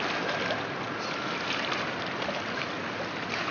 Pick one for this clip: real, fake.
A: real